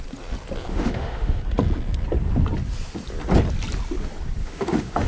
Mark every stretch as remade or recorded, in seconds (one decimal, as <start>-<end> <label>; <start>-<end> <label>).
0.0-0.7 recorded; 0.7-1.4 remade; 1.4-4.4 recorded; 4.4-5.1 remade